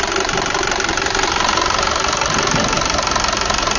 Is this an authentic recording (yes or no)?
yes